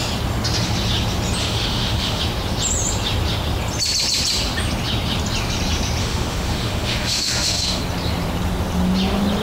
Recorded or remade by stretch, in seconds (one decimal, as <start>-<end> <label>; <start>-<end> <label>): 0.0-1.4 recorded; 1.4-2.2 remade; 2.2-6.0 recorded; 6.0-7.8 remade; 7.8-9.4 recorded